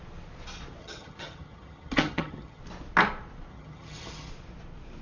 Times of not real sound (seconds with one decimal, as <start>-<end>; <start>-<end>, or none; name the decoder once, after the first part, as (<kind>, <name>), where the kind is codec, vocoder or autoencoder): 0.8-2.6 (vocoder, HiFi-GAN); 3.5-4.3